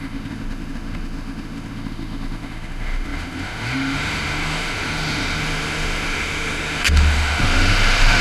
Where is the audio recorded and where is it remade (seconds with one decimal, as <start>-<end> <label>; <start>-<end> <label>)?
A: 0.0-8.2 remade